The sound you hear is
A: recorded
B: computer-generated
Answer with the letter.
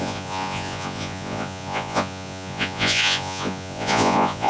B